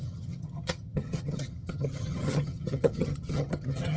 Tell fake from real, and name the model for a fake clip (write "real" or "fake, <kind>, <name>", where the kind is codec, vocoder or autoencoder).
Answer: fake, vocoder, HiFi-GAN